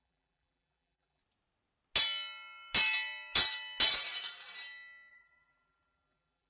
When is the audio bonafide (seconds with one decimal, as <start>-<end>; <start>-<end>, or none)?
1.2-5.1